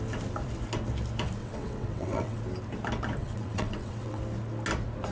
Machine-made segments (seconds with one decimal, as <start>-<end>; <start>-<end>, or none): 1.4-2.4; 3.2-4.2